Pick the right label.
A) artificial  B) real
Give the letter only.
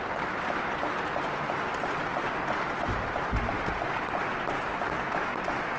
B